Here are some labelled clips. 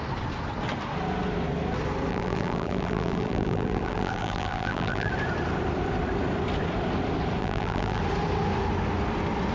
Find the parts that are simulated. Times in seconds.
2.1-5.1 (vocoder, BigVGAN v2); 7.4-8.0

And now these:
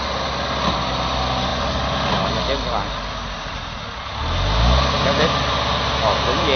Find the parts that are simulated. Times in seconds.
none

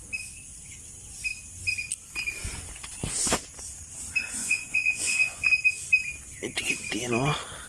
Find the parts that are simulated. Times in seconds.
4.4-5.5 (vocoder, Vocos)

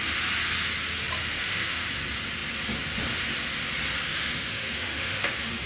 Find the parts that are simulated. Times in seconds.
1.2-1.9 (autoencoder, DAC-VAE); 4.1-5.7

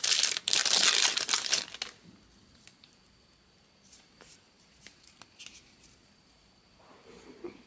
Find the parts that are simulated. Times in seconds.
0.0-0.6 (vocoder, BigVGAN v2); 2.8-7.7